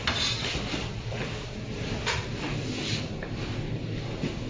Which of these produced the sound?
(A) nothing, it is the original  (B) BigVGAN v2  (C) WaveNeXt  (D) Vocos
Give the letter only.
A